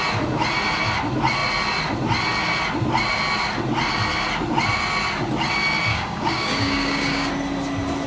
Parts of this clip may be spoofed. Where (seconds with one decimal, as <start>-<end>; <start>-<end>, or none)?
5.9-7.3